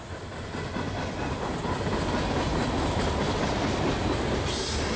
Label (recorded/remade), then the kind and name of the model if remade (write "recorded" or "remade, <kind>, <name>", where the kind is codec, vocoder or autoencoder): recorded